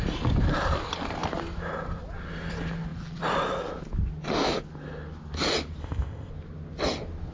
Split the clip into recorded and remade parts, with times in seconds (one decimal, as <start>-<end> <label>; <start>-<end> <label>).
0.0-5.8 recorded; 5.8-6.3 remade; 6.3-7.3 recorded